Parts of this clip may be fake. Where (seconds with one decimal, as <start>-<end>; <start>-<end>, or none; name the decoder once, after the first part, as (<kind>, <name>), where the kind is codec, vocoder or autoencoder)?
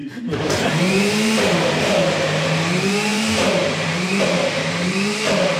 0.0-5.6 (vocoder, BigVGAN v2)